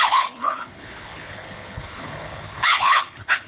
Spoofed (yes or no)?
yes